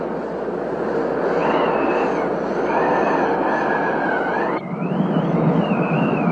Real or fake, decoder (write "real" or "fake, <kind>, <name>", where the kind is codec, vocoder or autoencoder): real